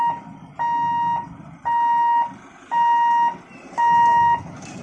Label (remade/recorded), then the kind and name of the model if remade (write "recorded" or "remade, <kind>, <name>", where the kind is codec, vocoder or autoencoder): recorded